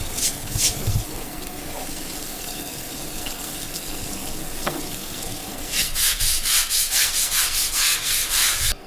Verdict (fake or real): fake